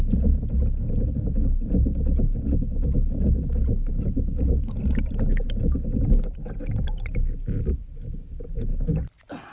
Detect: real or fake real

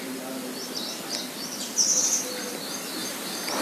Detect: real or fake real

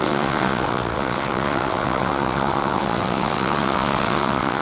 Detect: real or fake fake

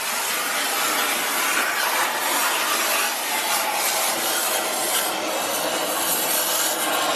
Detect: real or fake real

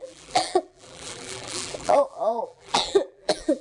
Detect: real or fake fake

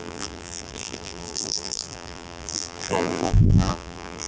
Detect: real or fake fake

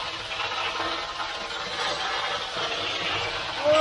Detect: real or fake real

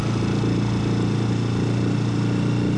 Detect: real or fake real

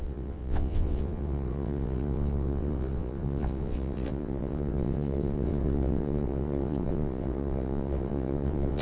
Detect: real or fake fake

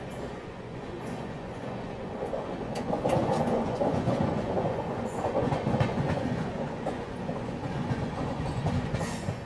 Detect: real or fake fake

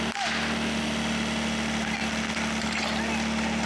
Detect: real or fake real